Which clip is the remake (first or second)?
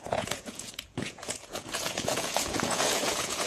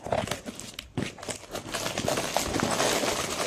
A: first